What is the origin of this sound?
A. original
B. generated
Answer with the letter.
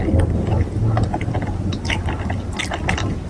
A